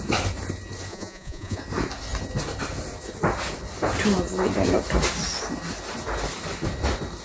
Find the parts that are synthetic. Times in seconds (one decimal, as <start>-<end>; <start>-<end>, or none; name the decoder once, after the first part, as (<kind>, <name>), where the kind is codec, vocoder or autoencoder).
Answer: 0.9-1.6 (vocoder, Vocos)